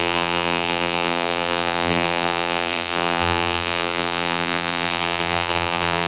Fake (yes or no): yes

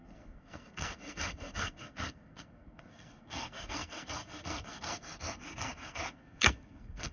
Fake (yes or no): yes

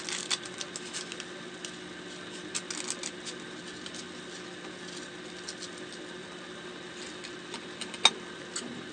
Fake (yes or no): no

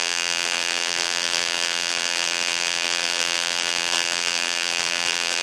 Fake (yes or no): yes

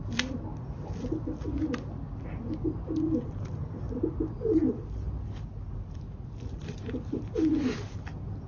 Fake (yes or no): no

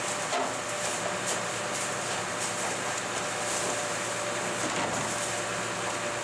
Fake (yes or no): no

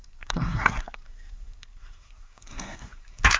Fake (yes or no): yes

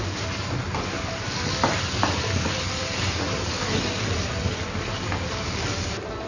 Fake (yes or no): no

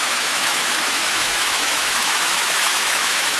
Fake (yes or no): yes